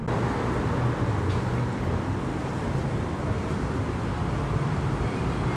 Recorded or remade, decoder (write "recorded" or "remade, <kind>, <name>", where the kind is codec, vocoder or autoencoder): recorded